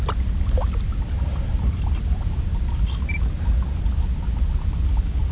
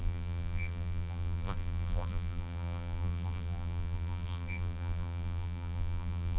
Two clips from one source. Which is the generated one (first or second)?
second